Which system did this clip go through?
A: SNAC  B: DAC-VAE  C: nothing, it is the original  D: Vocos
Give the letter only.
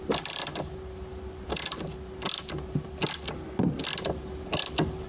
C